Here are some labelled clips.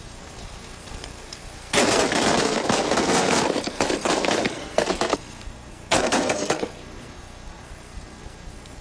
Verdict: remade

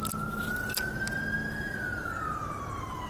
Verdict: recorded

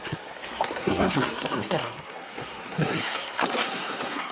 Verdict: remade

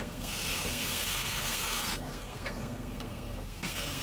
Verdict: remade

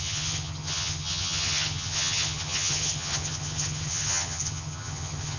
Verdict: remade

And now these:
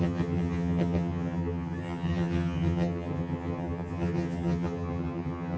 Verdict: remade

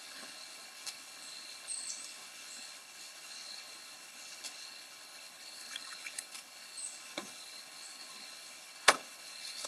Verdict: remade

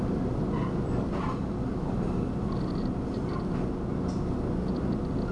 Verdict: recorded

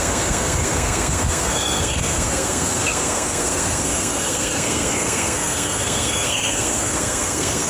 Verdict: remade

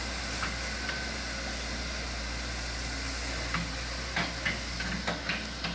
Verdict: recorded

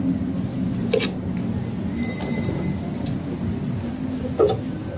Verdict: recorded